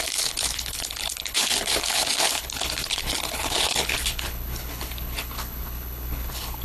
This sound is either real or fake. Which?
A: fake